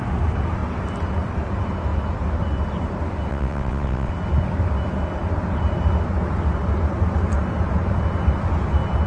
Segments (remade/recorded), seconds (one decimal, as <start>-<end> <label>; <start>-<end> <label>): 0.0-3.3 recorded; 3.3-4.1 remade; 4.1-9.1 recorded